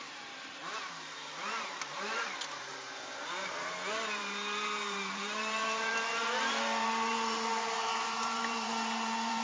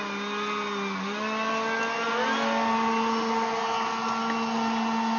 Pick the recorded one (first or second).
second